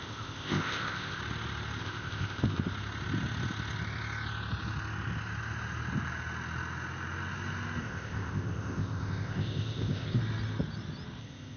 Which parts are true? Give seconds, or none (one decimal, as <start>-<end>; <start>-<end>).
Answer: 1.2-1.8; 2.7-7.8; 10.2-11.2